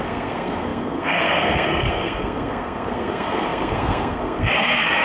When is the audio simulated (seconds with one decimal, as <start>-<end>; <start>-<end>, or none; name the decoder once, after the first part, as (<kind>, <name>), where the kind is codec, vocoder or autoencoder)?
0.0-5.0 (codec, SNAC)